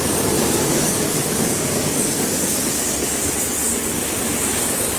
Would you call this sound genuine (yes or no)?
no